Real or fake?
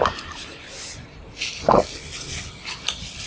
real